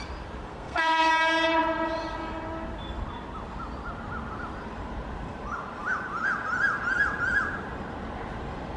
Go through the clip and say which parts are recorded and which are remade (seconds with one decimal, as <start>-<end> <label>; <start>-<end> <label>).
0.0-0.5 recorded; 0.5-1.1 remade; 1.1-8.8 recorded